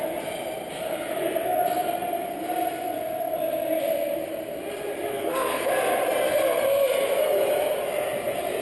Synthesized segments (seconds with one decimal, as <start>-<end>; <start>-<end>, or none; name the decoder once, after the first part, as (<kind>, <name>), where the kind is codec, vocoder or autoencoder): 5.1-5.7 (codec, SNAC)

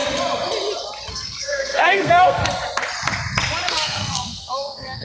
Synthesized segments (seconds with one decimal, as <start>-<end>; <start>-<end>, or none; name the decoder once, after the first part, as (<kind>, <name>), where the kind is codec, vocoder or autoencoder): 1.1-2.4 (codec, SNAC); 3.7-5.0